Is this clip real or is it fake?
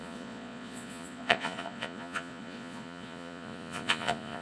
fake